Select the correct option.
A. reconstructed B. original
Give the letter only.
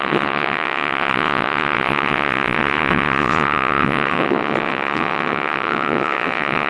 A